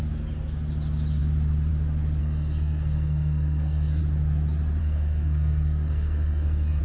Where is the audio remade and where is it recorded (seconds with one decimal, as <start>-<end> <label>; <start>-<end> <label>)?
0.0-2.2 recorded; 2.2-4.0 remade; 4.0-4.8 recorded; 4.8-6.8 remade